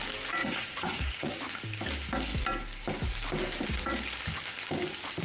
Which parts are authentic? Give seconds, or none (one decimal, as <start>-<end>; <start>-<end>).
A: 0.0-0.4; 1.3-5.2